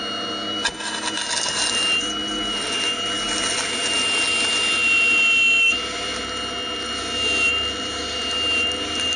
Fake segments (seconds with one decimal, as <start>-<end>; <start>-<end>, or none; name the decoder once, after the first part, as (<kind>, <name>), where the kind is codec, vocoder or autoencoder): none